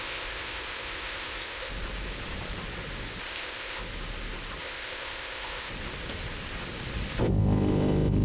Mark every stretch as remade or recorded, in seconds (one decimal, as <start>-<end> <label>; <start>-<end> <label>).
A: 0.0-1.7 remade; 1.7-3.2 recorded; 3.2-3.8 remade; 3.8-4.6 recorded; 4.6-5.7 remade; 5.7-7.2 recorded; 7.2-8.2 remade